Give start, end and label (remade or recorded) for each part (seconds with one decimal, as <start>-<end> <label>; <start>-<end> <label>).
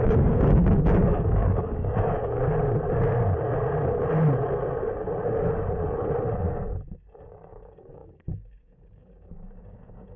0.0-2.4 remade; 2.4-7.5 recorded; 7.5-10.2 remade